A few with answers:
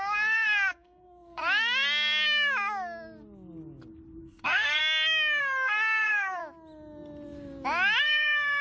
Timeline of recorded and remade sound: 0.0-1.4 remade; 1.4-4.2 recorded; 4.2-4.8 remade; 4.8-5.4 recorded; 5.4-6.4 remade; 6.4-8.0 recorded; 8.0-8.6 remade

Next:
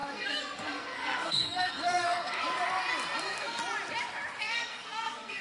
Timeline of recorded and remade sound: 0.0-2.4 remade; 2.4-3.2 recorded; 3.2-3.6 remade; 3.6-4.4 recorded; 4.4-5.4 remade

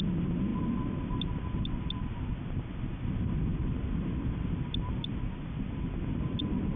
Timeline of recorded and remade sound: 0.0-6.8 recorded

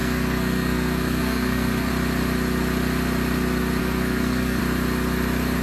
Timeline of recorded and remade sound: 0.0-1.9 remade; 1.9-3.8 recorded; 3.8-4.6 remade; 4.6-5.6 recorded

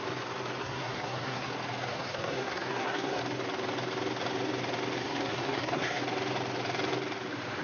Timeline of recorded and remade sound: 0.0-0.6 recorded; 0.6-1.5 remade; 1.5-1.9 recorded; 1.9-3.2 remade; 3.2-5.0 recorded; 5.0-6.0 remade; 6.0-7.6 recorded

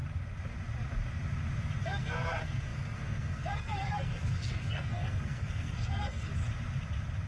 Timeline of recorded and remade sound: 0.0-1.8 recorded; 1.8-6.3 remade; 6.3-7.3 recorded

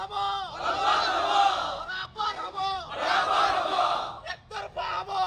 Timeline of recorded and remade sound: 0.0-1.4 recorded; 1.4-2.9 remade; 2.9-3.7 recorded; 3.7-4.4 remade; 4.4-5.3 recorded